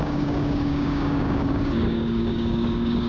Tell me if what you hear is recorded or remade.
remade